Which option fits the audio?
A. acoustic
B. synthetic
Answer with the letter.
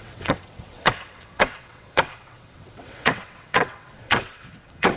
B